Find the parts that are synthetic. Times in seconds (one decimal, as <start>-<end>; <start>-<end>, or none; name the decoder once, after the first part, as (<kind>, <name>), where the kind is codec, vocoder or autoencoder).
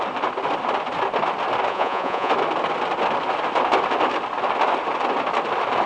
1.7-2.3 (vocoder, Vocos)